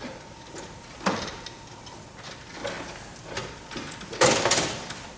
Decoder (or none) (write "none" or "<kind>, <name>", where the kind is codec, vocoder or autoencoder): none